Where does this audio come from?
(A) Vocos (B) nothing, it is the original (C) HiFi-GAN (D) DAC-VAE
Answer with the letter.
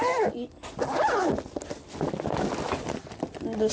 B